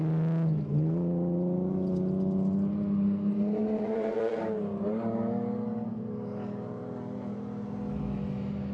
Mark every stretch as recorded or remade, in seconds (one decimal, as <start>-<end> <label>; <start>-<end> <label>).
0.0-3.6 recorded; 3.6-4.4 remade; 4.4-8.7 recorded